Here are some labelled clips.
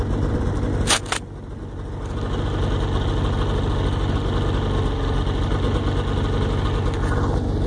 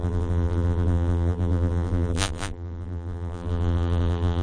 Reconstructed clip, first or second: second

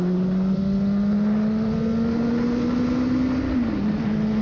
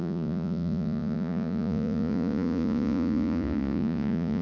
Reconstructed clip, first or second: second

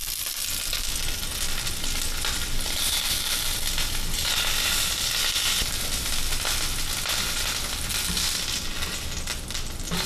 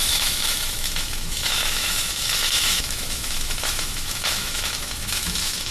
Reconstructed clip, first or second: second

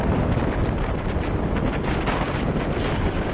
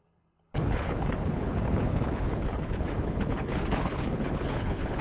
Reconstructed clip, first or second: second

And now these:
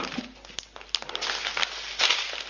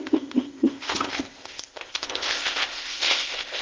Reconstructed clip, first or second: second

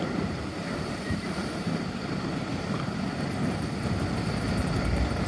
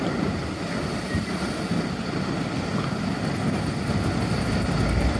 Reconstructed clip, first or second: first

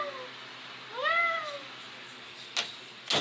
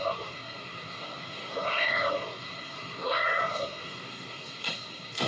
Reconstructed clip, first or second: second